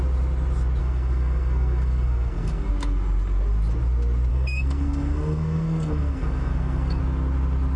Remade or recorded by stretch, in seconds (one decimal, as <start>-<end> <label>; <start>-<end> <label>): 0.0-0.8 recorded; 0.8-2.7 remade; 2.7-4.3 recorded; 4.3-7.0 remade; 7.0-7.8 recorded

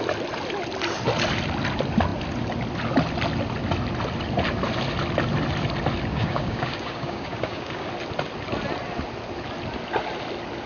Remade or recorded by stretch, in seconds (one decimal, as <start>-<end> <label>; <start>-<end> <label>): 0.0-6.1 recorded; 6.1-7.9 remade; 7.9-10.7 recorded

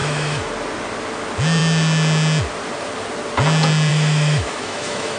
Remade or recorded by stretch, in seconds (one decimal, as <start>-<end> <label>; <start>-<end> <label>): 0.0-0.5 remade; 0.5-3.9 recorded; 3.9-5.2 remade